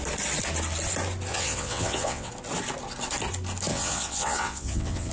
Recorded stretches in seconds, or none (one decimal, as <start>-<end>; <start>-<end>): 0.0-1.3; 2.3-3.7